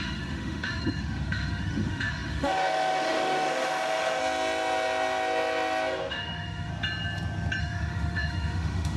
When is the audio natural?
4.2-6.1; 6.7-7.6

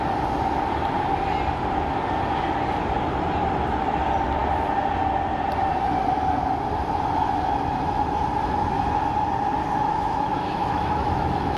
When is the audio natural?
0.0-9.9